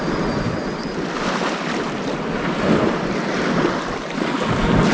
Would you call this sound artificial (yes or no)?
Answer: no